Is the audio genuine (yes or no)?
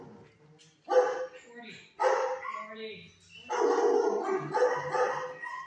yes